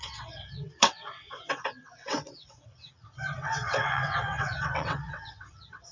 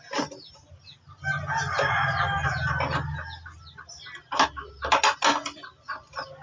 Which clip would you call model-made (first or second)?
first